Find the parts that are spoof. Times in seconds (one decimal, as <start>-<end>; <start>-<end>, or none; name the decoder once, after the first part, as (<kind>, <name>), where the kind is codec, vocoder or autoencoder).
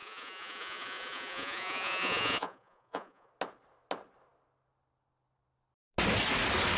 0.0-3.3 (vocoder, Vocos)